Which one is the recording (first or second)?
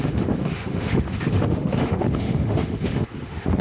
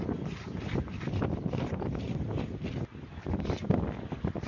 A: second